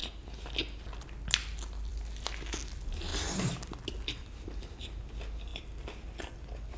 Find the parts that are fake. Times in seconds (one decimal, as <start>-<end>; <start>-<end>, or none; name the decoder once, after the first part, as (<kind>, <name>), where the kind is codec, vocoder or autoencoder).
3.1-4.6 (vocoder, BigVGAN v2)